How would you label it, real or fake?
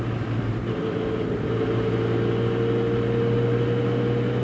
real